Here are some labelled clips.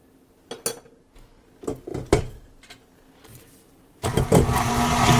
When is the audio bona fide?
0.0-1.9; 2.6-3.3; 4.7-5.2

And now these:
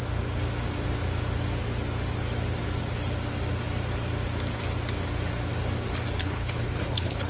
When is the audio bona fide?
0.0-6.2

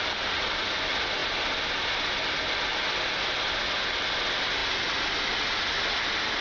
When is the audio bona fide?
0.0-6.4